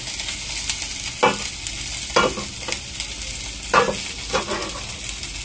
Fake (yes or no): no